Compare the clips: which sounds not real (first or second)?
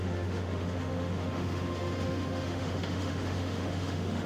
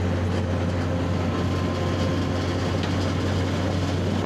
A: first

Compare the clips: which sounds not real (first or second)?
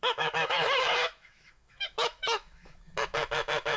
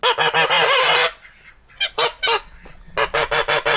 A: first